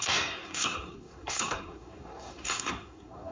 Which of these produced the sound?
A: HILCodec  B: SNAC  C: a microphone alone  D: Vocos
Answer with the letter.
B